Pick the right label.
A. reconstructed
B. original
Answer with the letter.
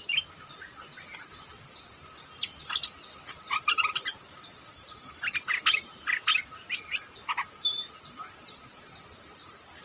B